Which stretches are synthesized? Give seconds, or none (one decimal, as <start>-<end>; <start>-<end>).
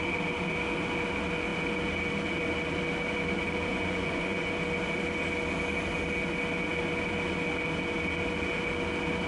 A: 3.7-4.5